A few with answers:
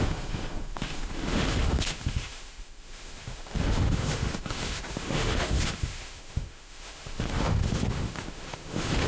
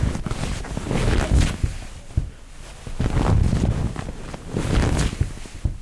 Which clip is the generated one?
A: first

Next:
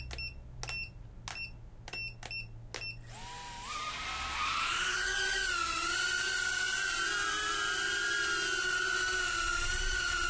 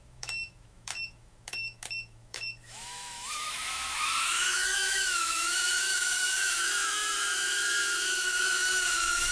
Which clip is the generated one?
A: second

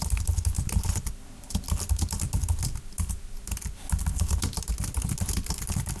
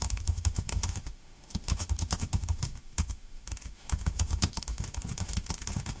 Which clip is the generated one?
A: second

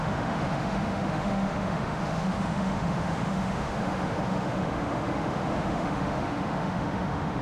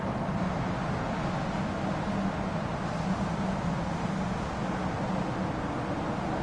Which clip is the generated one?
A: first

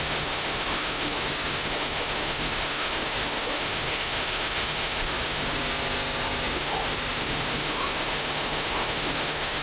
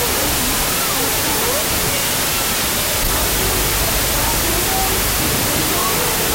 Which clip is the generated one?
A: first